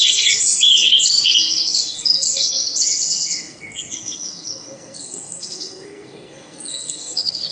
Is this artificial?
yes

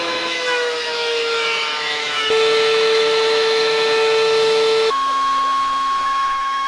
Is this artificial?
yes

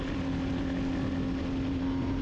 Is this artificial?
no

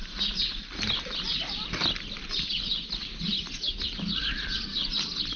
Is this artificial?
no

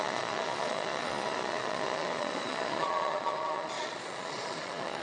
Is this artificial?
yes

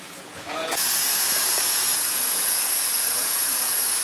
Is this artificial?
yes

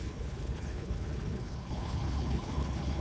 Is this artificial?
yes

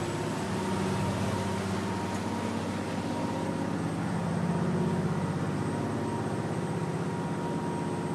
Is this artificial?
no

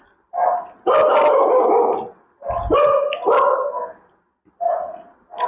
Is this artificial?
no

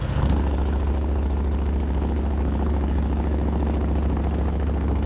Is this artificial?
yes